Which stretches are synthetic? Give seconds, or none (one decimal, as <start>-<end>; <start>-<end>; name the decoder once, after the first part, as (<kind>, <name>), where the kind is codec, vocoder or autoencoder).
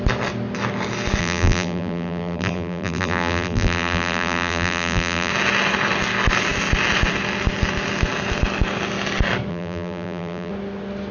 1.2-5.3 (vocoder, BigVGAN v2); 9.5-10.5